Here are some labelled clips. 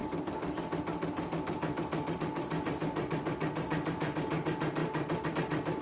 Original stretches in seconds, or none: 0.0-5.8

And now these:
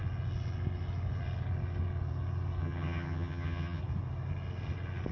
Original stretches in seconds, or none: 0.0-2.6; 3.8-5.1

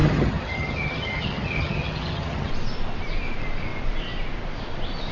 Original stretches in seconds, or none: 2.5-5.1